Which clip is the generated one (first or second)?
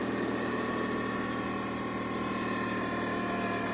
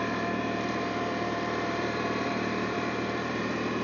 second